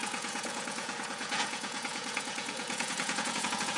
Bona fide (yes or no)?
no